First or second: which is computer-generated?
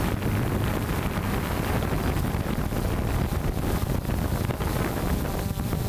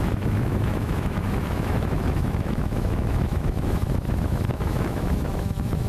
second